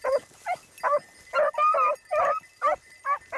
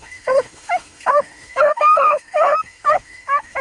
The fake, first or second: second